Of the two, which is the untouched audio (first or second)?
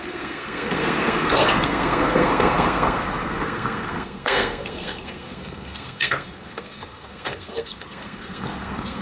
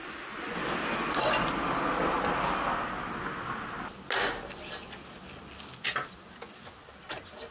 second